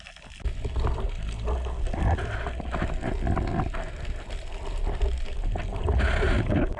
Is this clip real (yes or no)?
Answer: yes